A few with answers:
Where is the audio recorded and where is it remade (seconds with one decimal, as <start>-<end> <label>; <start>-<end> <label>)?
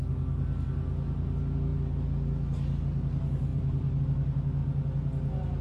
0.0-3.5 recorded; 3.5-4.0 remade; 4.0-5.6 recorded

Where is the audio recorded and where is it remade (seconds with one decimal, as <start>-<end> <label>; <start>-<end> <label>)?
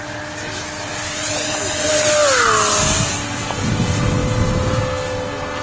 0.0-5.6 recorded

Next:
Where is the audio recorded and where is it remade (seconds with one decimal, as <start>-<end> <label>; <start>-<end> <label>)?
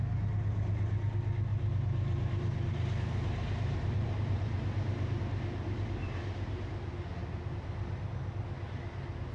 0.0-1.5 recorded; 1.5-5.2 remade; 5.2-6.0 recorded; 6.0-6.6 remade; 6.6-9.3 recorded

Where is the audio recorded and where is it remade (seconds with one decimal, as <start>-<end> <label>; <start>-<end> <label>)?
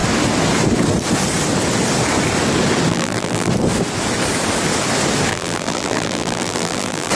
0.0-2.9 recorded; 2.9-3.5 remade; 3.5-5.3 recorded; 5.3-7.1 remade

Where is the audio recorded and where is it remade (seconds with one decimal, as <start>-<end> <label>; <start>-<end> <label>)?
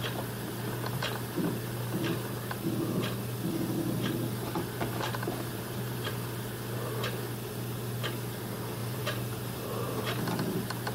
0.0-5.5 recorded; 5.5-6.1 remade; 6.1-8.8 recorded; 8.8-10.2 remade; 10.2-10.9 recorded